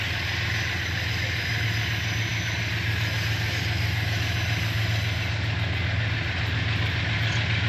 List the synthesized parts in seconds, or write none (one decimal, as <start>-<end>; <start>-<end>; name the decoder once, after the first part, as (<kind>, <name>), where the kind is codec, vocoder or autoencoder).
none